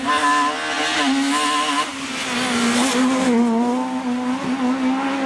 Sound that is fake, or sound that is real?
real